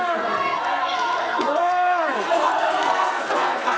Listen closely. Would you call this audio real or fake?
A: fake